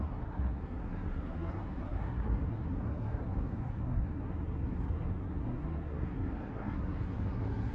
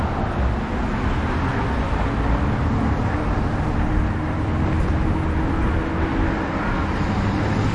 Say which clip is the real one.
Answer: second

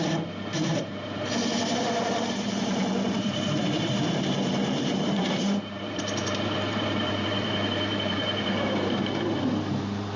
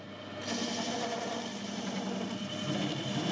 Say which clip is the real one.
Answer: second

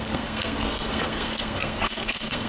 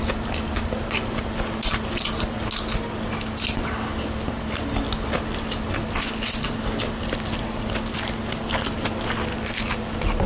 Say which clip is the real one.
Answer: second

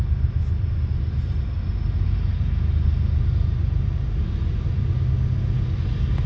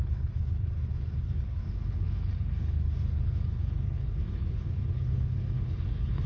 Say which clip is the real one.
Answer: first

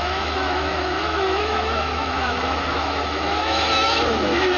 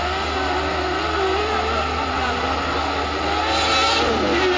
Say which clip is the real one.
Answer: second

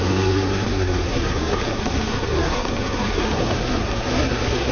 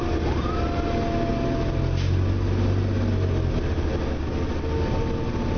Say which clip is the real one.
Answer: second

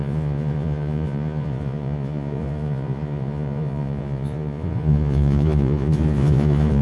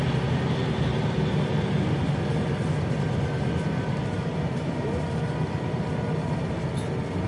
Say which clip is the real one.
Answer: second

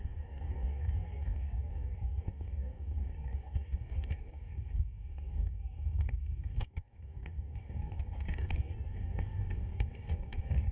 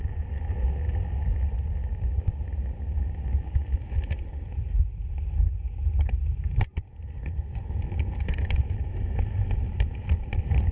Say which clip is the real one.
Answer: second